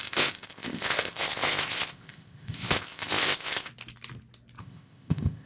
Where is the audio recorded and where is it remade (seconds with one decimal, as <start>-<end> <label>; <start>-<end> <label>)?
0.0-3.7 remade; 3.7-4.6 recorded; 4.6-5.5 remade

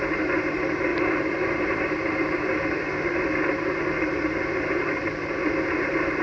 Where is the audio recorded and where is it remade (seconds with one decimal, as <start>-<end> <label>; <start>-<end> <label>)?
0.0-6.2 recorded

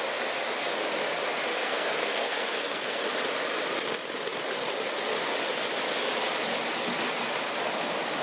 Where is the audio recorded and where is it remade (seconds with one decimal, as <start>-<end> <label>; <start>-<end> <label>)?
0.0-1.5 recorded; 1.5-3.0 remade; 3.0-8.2 recorded